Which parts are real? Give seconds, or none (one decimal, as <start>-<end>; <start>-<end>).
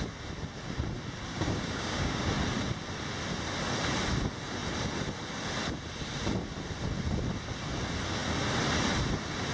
0.0-1.3; 2.3-9.5